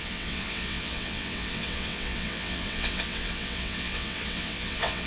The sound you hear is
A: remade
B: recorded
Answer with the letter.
A